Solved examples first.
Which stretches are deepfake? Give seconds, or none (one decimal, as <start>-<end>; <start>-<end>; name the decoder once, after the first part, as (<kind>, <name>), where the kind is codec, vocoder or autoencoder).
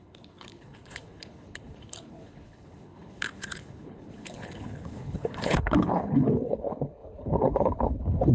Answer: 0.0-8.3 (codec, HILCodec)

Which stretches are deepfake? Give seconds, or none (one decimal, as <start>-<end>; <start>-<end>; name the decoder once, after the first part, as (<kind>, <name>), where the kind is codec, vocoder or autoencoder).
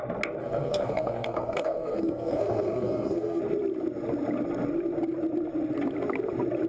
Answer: 0.4-3.4 (codec, SNAC)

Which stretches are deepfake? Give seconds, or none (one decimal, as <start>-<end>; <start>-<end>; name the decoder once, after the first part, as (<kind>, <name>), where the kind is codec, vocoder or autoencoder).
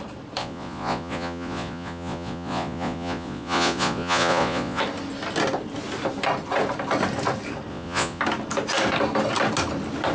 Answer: 0.4-4.8 (vocoder, Vocos); 7.7-8.2